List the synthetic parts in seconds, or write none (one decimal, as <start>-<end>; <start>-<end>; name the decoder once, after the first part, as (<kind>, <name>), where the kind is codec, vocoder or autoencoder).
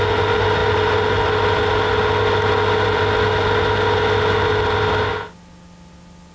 none